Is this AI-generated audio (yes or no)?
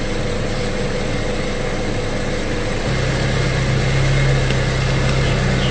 no